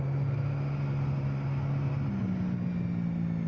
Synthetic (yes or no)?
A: no